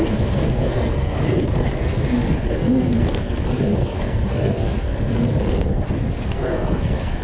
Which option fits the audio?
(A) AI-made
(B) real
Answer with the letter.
A